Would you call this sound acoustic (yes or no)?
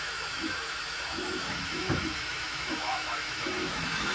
no